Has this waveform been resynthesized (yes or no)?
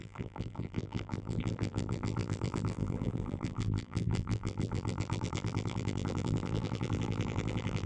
yes